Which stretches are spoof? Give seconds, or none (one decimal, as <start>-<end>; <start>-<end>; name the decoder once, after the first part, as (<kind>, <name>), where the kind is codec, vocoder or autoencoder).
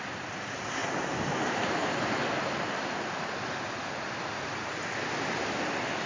0.0-0.8 (vocoder, BigVGAN v2); 1.4-2.2